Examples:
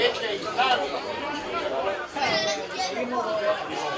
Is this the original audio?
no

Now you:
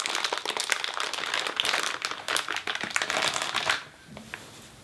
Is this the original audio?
yes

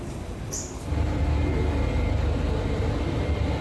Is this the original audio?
yes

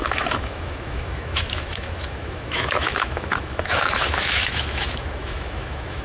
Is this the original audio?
no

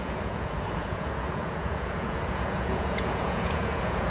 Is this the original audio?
no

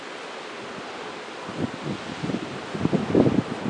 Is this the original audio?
yes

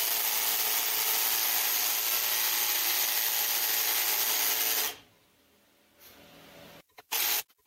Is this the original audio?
yes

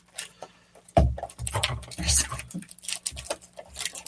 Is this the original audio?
yes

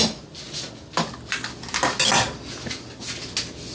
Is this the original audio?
yes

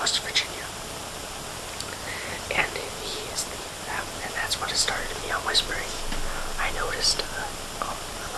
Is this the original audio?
yes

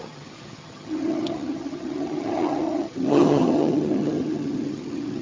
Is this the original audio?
no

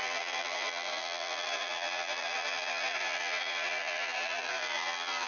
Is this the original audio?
no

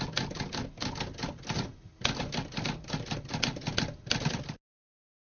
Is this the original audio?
yes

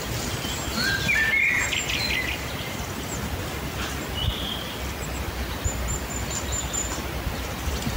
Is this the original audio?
yes